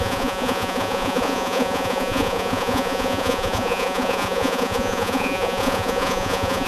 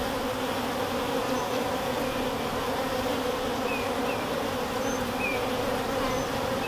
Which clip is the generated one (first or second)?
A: first